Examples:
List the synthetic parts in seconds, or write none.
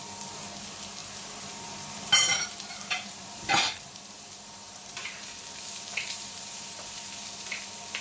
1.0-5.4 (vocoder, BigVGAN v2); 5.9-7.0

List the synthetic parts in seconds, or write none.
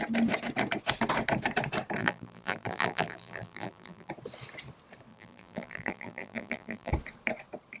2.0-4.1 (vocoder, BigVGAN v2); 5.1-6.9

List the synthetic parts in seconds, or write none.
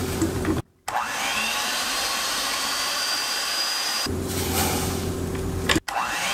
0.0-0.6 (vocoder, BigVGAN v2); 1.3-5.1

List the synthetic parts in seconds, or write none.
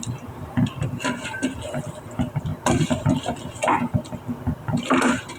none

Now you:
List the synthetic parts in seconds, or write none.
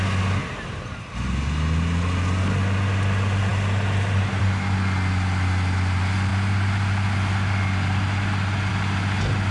0.4-1.1 (vocoder, BigVGAN v2)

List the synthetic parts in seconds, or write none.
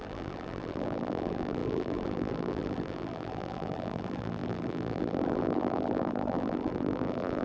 0.0-7.4 (vocoder, BigVGAN v2)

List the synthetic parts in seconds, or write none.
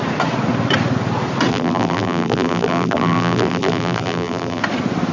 1.5-4.6 (vocoder, BigVGAN v2)